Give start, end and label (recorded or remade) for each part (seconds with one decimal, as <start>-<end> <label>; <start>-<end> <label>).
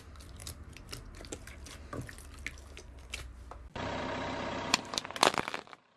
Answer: 0.0-6.0 recorded